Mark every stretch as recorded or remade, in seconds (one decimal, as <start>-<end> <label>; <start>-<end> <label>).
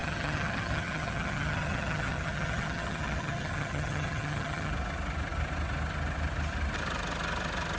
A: 0.0-4.7 remade; 4.7-7.8 recorded